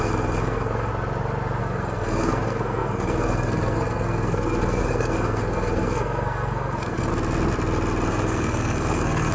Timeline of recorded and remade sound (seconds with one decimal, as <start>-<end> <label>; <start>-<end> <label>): 0.0-0.9 remade; 0.9-1.6 recorded; 1.6-7.1 remade; 7.1-8.1 recorded; 8.1-9.3 remade